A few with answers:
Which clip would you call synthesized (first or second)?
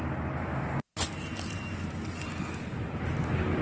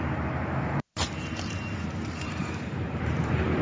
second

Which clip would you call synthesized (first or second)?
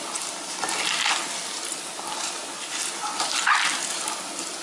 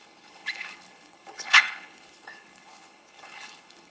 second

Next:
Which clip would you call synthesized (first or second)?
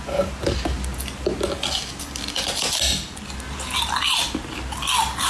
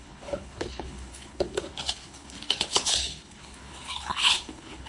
second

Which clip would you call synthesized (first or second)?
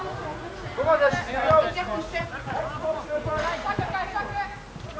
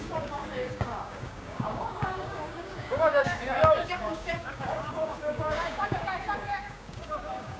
second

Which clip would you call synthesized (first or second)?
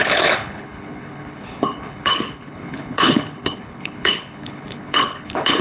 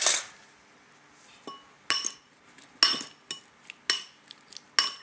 first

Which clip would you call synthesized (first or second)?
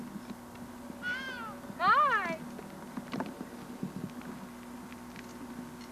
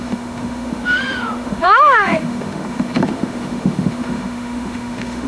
second